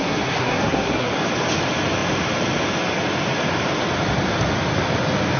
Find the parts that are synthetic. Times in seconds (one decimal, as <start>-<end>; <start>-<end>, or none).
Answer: 0.0-1.1